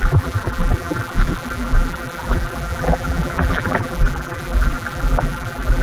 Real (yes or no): no